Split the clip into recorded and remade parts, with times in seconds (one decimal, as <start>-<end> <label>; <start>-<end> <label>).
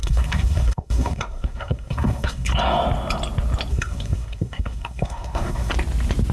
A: 0.0-2.5 remade; 2.5-3.7 recorded; 3.7-5.7 remade; 5.7-6.3 recorded